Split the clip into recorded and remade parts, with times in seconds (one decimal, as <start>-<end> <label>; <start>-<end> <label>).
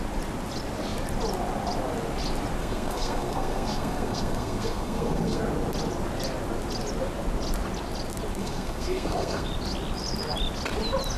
0.0-2.6 recorded; 2.6-5.4 remade; 5.4-8.4 recorded; 8.4-9.5 remade; 9.5-11.2 recorded